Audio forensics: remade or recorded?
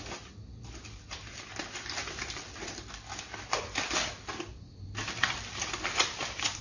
recorded